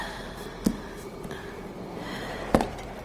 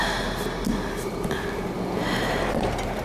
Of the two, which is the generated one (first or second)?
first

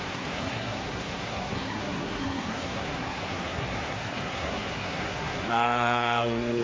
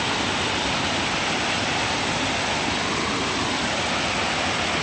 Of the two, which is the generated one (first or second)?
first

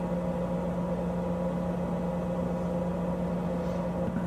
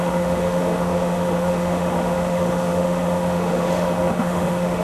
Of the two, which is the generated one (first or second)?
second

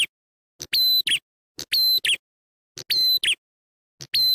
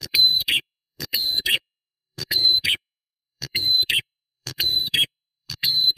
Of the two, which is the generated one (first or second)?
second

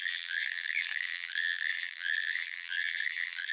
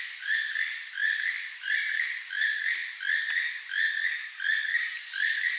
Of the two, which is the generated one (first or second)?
first